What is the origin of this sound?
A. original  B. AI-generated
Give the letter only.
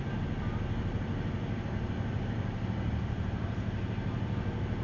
A